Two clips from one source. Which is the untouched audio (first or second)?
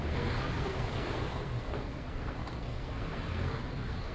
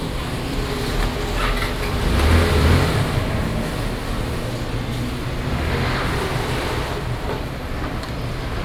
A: second